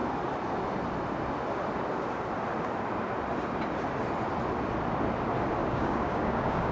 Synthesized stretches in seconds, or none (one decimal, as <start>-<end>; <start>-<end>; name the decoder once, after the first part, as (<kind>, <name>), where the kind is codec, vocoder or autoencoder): 5.6-6.7 (codec, DAC)